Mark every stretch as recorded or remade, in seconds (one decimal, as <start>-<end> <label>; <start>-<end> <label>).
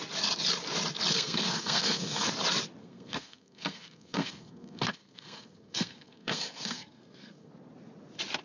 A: 0.0-1.1 recorded; 1.1-2.3 remade; 2.3-2.8 recorded; 2.8-7.5 remade; 7.5-8.4 recorded